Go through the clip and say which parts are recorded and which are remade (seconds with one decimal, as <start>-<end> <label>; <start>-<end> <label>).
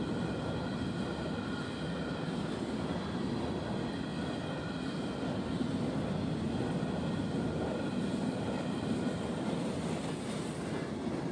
0.0-11.3 recorded